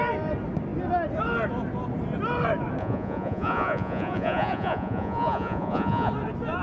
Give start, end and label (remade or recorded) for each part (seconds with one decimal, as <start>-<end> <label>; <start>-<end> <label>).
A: 0.0-2.8 recorded; 2.8-6.1 remade; 6.1-6.6 recorded